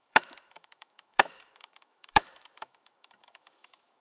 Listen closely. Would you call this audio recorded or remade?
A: remade